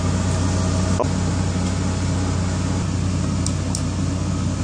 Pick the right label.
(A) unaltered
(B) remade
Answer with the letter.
A